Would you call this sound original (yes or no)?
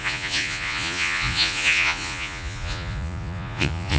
no